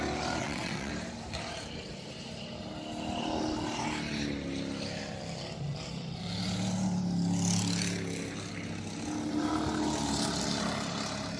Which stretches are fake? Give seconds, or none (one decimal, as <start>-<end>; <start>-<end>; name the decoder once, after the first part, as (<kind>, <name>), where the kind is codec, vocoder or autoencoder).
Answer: 0.4-0.9 (vocoder, WaveNeXt)